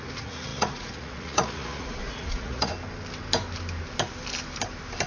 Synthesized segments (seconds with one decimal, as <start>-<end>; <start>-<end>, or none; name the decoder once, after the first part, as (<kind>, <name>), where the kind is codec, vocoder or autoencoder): 0.0-2.7 (vocoder, Vocos)